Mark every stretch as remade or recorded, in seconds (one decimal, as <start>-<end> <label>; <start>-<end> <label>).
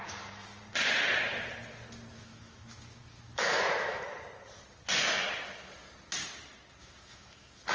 0.0-2.1 recorded; 2.1-4.0 remade; 4.0-6.8 recorded; 6.8-7.7 remade